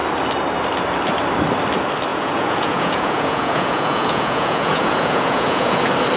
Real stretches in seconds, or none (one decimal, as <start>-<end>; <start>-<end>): 0.0-2.1; 5.8-6.2